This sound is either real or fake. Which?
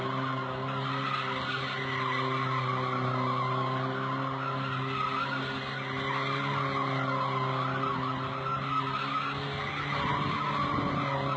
real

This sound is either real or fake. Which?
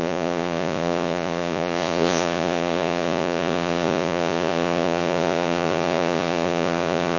fake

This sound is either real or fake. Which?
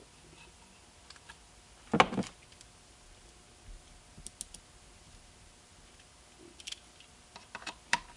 real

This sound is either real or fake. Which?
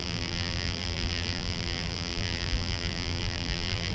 fake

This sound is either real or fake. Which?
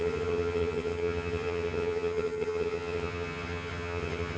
fake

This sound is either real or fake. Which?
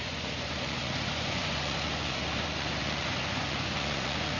fake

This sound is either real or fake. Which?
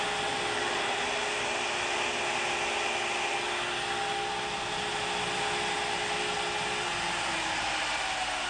real